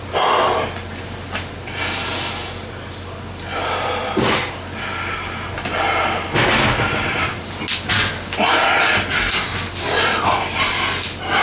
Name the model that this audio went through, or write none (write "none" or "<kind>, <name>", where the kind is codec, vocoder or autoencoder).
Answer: none